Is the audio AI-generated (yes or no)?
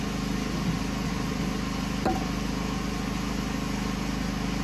no